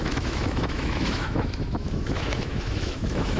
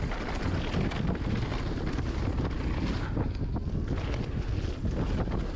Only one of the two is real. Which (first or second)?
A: second